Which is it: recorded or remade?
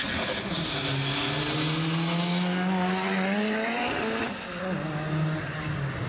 recorded